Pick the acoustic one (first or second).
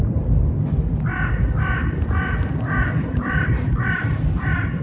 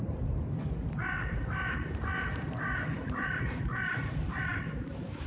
first